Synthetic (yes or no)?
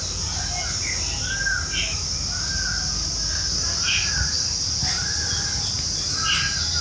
no